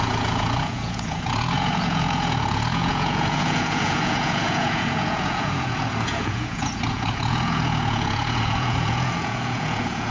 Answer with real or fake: fake